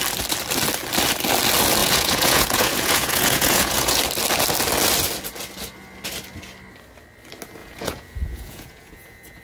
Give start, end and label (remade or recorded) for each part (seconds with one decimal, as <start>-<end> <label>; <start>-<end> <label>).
0.0-1.8 recorded; 1.8-4.0 remade; 4.0-7.6 recorded; 7.6-9.4 remade